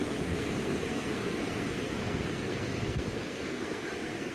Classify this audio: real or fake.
fake